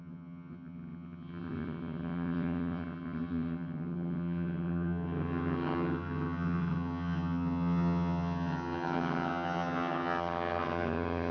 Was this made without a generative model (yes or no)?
no